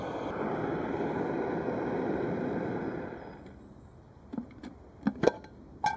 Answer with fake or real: real